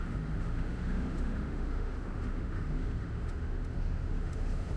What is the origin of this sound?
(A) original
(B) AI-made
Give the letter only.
B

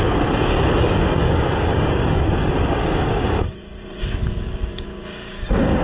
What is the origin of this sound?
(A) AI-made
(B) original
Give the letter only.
A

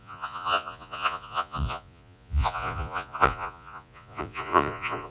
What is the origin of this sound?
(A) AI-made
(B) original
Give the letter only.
A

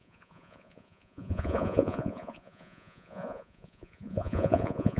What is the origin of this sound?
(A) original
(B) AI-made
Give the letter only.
B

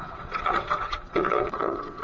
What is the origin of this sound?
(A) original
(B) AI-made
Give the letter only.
B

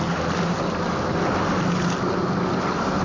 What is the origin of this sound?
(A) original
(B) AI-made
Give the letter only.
A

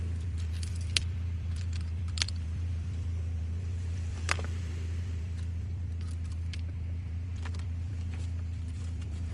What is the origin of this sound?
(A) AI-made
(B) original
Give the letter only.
A